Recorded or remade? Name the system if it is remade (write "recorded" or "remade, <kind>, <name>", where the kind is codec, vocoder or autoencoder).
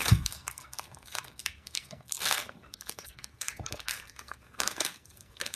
remade, codec, SNAC